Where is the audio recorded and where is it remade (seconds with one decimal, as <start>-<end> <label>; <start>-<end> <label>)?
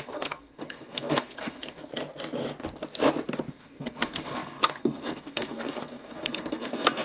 0.0-1.9 remade; 1.9-3.5 recorded; 3.5-7.0 remade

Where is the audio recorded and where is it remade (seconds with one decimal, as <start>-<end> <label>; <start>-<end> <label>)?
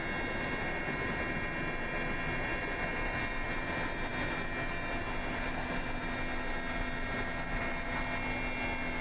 0.0-9.0 recorded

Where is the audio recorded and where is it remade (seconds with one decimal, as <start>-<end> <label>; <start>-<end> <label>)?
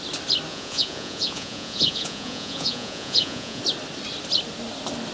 0.0-0.5 recorded; 0.5-3.6 remade; 3.6-5.1 recorded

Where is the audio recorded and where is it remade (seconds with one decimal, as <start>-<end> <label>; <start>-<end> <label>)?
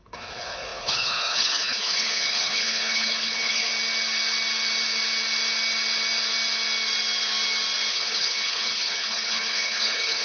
0.0-3.7 remade; 3.7-7.9 recorded; 7.9-10.2 remade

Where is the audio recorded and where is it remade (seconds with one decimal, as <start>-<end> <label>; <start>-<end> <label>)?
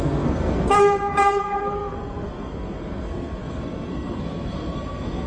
0.0-5.3 remade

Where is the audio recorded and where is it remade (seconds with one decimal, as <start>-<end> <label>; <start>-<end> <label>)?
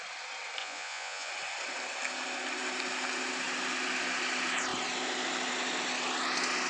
0.0-0.6 recorded; 0.6-1.3 remade; 1.3-6.7 recorded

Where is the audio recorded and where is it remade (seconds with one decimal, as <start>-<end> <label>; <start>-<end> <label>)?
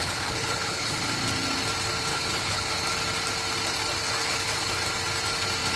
0.0-1.0 remade; 1.0-2.1 recorded; 2.1-2.7 remade; 2.7-4.2 recorded; 4.2-4.8 remade; 4.8-5.8 recorded